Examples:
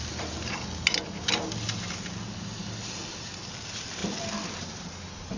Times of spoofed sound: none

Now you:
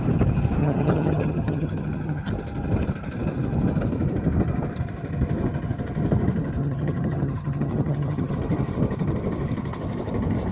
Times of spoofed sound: 0.6-2.3 (vocoder, HiFi-GAN); 6.6-8.3

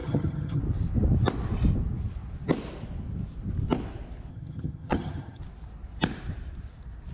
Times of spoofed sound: 0.0-0.6 (vocoder, HiFi-GAN); 4.3-5.4

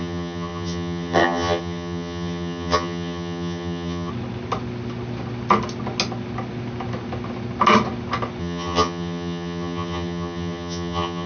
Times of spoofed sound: 0.0-4.1 (vocoder, HiFi-GAN); 8.4-11.3

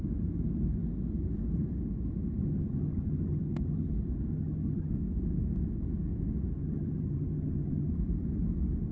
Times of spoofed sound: 2.4-3.9 (vocoder, HiFi-GAN); 4.3-4.9; 6.6-7.9

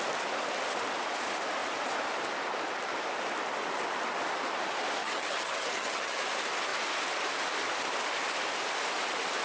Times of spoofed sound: 5.0-6.2 (vocoder, HiFi-GAN)

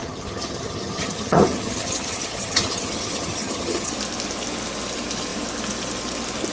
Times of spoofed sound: 0.0-3.9 (vocoder, HiFi-GAN)

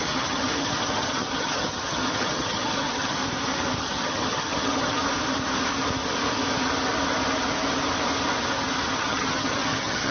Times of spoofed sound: 0.0-3.2 (vocoder, HiFi-GAN); 3.8-5.0; 9.0-10.1